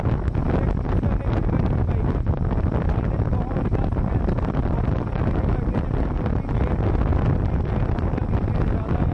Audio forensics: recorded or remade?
recorded